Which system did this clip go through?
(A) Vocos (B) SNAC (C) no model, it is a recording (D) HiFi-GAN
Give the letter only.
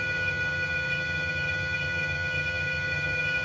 D